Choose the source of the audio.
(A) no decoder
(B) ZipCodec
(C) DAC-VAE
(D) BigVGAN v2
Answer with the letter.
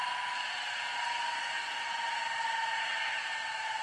A